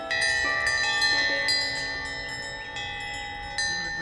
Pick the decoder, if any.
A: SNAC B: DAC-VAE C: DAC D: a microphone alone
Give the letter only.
D